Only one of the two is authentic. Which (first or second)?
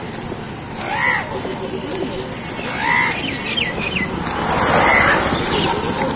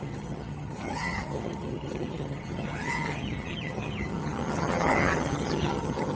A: first